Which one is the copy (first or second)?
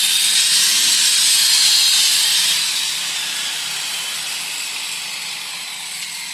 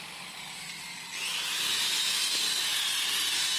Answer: first